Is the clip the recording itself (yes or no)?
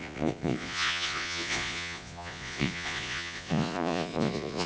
no